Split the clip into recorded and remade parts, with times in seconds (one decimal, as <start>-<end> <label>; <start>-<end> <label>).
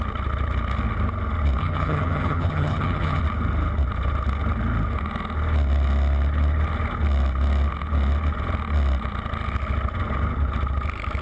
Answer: 0.0-1.6 recorded; 1.6-3.2 remade; 3.2-11.2 recorded